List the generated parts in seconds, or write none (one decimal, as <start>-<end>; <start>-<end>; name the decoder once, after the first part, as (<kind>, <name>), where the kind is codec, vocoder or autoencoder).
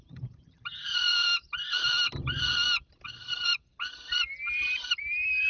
0.0-1.1 (vocoder, BigVGAN v2); 2.9-3.7; 4.5-5.5